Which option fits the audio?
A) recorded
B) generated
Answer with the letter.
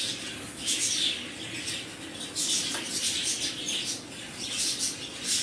A